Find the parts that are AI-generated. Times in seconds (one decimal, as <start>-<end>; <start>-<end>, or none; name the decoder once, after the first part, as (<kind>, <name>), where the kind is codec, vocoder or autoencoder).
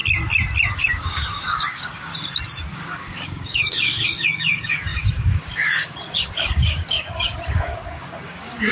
0.7-2.1 (codec, DAC); 2.7-8.7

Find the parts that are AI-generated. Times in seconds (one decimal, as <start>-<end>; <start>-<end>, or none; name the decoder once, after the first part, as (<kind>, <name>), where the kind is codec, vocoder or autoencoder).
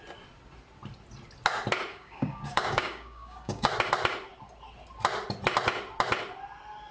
1.9-3.7 (codec, DAC)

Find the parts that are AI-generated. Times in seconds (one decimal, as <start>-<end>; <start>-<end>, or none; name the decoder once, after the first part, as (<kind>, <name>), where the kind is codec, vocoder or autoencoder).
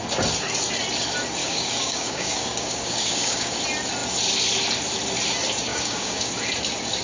1.4-3.6 (codec, DAC); 5.7-6.3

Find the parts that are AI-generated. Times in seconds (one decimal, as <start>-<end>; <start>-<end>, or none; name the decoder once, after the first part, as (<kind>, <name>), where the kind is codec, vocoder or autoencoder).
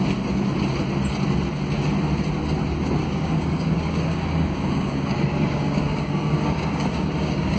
3.0-7.6 (codec, DAC)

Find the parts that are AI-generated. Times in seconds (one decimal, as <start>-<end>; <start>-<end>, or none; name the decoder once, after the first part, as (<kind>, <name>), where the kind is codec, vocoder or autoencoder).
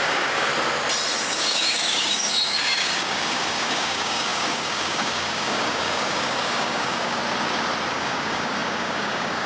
0.0-0.5 (codec, DAC); 1.2-7.2; 7.9-9.5